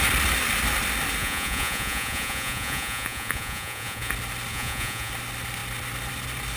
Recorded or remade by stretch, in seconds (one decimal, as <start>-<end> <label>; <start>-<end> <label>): 0.0-1.2 recorded; 1.2-4.1 remade; 4.1-4.5 recorded; 4.5-5.1 remade; 5.1-6.6 recorded